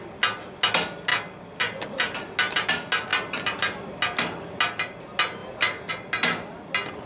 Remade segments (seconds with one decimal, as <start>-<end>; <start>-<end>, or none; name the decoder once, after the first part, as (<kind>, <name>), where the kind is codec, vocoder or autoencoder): none